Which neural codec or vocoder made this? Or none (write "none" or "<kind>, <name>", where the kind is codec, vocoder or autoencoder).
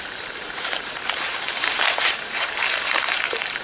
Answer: vocoder, BigVGAN v2